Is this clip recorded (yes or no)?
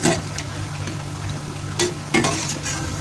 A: yes